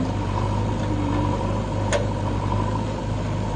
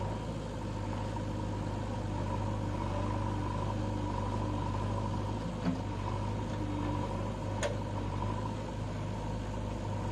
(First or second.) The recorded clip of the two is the second